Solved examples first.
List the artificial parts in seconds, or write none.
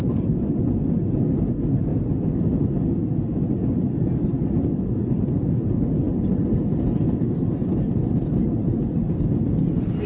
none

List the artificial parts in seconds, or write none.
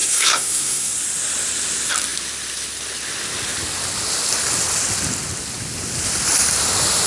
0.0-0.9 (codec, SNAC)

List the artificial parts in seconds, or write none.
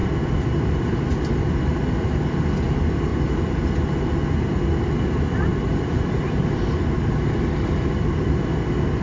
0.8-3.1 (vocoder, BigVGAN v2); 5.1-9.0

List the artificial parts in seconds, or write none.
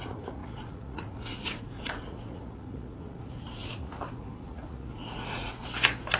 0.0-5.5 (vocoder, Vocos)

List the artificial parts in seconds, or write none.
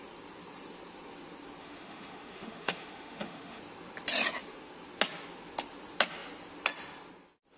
1.6-3.6 (autoencoder, DAC-VAE)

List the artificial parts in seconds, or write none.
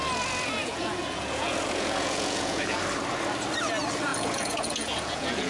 0.6-2.8 (vocoder, Vocos); 4.1-5.5